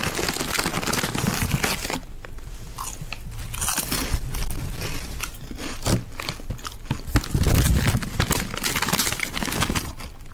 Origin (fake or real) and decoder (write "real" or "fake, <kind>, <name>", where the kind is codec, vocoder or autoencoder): real